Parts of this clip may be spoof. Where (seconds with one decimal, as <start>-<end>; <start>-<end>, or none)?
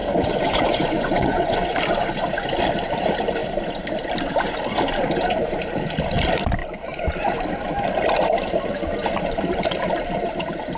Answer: 0.0-1.7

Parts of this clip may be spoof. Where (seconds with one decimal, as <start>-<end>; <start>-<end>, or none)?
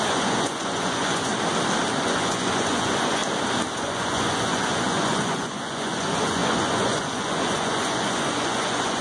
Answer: 0.0-1.3; 2.0-3.2; 3.7-9.0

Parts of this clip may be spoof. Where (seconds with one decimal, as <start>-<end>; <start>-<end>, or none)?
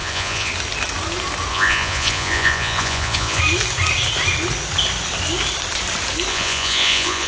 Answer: 0.0-0.5; 1.5-3.4; 6.3-7.3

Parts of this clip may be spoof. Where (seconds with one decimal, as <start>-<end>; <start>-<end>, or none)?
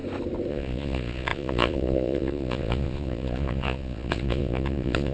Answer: 0.5-5.1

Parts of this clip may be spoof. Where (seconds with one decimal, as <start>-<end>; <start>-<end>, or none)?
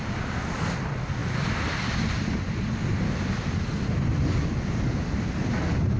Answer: none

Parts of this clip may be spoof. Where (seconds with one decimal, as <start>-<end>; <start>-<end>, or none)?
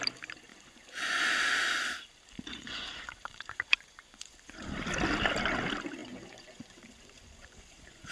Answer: 0.5-1.3; 2.5-4.8; 6.0-8.1